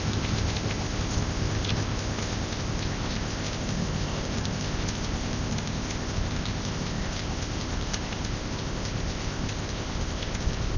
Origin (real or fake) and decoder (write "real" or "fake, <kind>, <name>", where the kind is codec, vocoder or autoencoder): fake, codec, ZipCodec